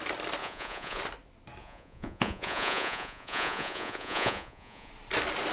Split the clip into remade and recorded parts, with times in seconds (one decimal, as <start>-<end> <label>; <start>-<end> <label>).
0.0-0.4 recorded; 0.4-1.0 remade; 1.0-1.6 recorded; 1.6-4.9 remade; 4.9-5.5 recorded

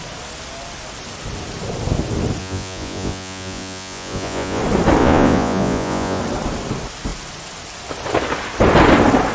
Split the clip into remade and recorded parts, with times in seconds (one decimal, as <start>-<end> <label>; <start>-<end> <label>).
0.0-2.4 recorded; 2.4-4.6 remade; 4.6-5.0 recorded; 5.0-6.2 remade; 6.2-9.3 recorded

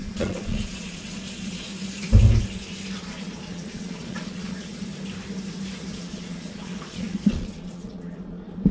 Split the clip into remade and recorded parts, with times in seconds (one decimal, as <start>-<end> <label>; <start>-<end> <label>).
0.0-1.7 remade; 1.7-3.0 recorded; 3.0-4.7 remade; 4.7-5.9 recorded; 5.9-8.7 remade

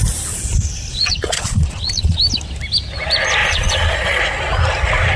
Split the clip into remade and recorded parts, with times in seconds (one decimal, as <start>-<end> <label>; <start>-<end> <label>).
0.0-0.9 recorded; 0.9-2.2 remade; 2.2-3.4 recorded; 3.4-4.2 remade; 4.2-5.2 recorded

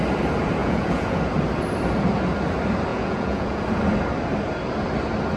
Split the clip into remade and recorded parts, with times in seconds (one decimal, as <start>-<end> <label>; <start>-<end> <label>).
0.0-0.6 recorded; 0.6-1.2 remade; 1.2-2.9 recorded; 2.9-3.6 remade; 3.6-5.4 recorded

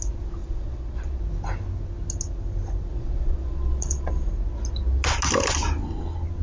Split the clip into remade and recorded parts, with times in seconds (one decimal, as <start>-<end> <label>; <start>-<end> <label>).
0.0-0.4 recorded; 0.4-1.2 remade; 1.2-2.9 recorded; 2.9-4.3 remade; 4.3-6.4 recorded

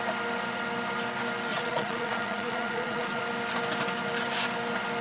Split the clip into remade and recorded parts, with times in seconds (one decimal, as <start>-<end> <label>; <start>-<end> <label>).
0.0-1.5 recorded; 1.5-3.2 remade; 3.2-5.0 recorded

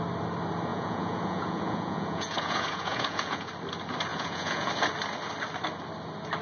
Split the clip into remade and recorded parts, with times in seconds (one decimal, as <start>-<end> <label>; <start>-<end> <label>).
0.0-0.7 recorded; 0.7-3.5 remade; 3.5-4.1 recorded; 4.1-4.7 remade; 4.7-6.4 recorded